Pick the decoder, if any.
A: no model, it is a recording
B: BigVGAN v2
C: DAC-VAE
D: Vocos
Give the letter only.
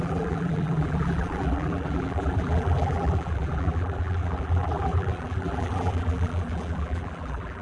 B